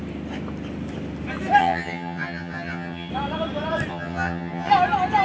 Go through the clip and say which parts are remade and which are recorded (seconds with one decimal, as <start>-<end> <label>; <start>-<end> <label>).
0.0-1.6 recorded; 1.6-3.1 remade; 3.1-3.9 recorded; 3.9-4.7 remade; 4.7-5.2 recorded